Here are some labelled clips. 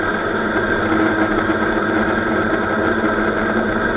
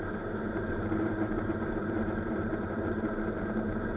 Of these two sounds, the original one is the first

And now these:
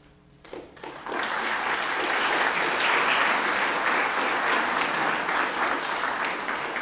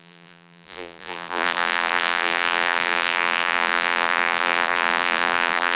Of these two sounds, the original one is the first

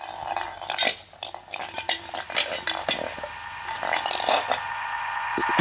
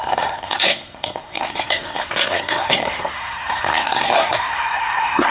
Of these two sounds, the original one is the first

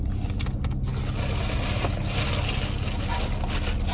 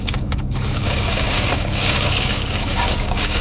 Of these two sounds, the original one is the first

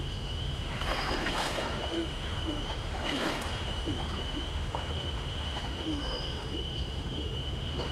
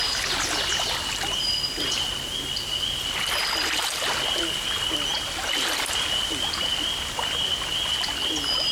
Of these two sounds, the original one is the second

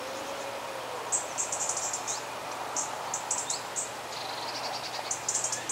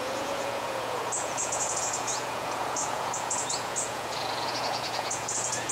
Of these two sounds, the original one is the first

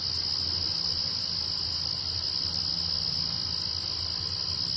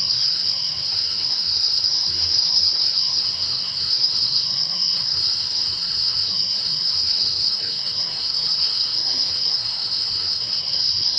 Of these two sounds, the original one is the first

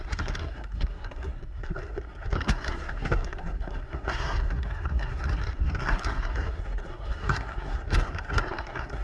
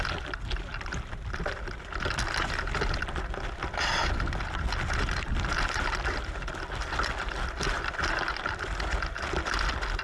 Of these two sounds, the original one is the second